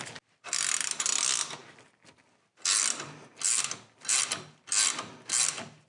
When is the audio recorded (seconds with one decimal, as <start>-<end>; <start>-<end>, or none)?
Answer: 0.0-5.9